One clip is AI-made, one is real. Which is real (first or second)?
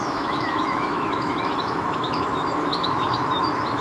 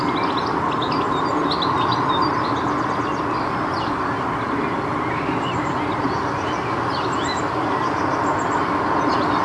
second